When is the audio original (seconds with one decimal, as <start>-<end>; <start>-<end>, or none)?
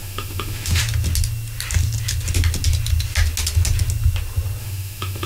0.8-4.6